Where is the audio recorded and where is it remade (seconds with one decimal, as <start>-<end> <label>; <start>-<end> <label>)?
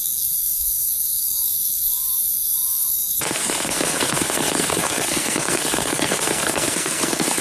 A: 0.0-7.4 remade